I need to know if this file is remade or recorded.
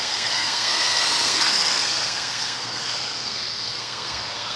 remade